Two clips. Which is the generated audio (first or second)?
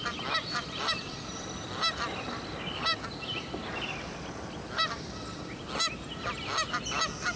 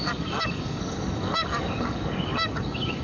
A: second